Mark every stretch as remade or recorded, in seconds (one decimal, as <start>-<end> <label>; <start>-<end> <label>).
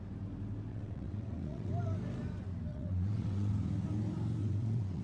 0.0-0.7 recorded; 0.7-1.7 remade; 1.7-2.7 recorded; 2.7-3.5 remade; 3.5-4.4 recorded; 4.4-5.0 remade